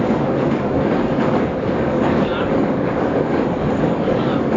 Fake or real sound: fake